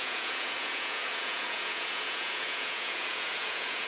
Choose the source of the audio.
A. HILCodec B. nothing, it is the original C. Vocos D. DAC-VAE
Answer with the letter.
C